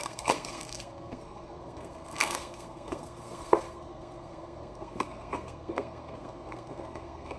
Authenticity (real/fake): fake